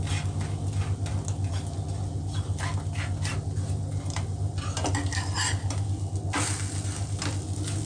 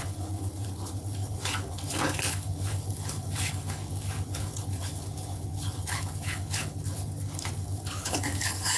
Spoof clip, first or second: second